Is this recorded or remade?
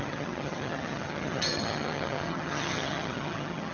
remade